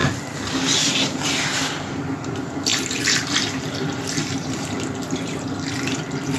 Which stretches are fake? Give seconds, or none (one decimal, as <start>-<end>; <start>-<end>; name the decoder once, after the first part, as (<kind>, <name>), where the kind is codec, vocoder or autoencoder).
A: 2.7-5.4 (vocoder, BigVGAN v2)